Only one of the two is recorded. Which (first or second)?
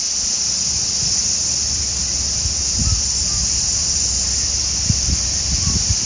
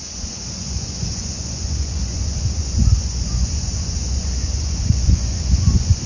first